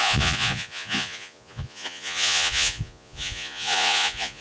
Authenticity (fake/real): fake